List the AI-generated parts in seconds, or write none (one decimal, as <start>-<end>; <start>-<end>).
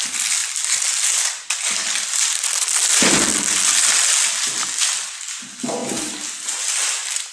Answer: none